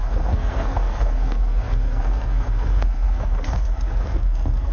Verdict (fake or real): fake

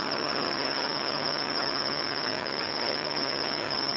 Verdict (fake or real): fake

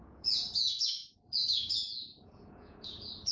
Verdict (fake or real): fake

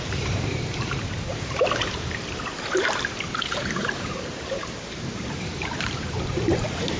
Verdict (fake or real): fake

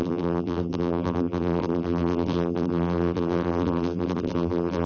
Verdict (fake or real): fake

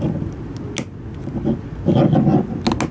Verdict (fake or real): real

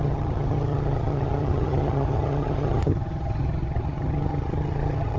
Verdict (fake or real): fake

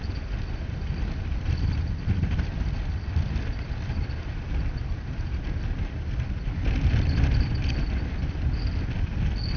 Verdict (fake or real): real